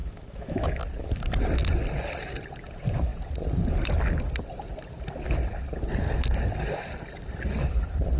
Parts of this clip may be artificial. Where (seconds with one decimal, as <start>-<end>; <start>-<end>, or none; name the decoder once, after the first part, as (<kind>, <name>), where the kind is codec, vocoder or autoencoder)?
0.0-0.8 (autoencoder, DAC-VAE)

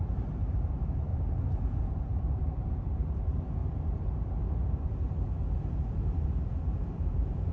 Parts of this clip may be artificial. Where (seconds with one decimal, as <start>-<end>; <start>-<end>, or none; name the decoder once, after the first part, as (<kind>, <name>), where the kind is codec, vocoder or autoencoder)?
0.0-1.1 (vocoder, BigVGAN v2); 1.9-3.6; 6.0-7.5

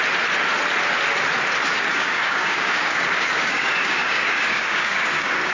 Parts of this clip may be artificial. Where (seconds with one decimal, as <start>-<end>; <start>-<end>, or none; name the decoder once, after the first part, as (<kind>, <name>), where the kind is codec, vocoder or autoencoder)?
1.9-5.5 (codec, DAC)

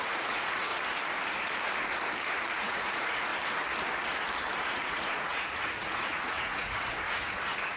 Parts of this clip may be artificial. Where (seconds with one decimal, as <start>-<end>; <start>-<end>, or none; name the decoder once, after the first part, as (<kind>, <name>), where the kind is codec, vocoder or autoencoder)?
0.0-0.7 (vocoder, Vocos); 2.5-3.3; 4.6-7.8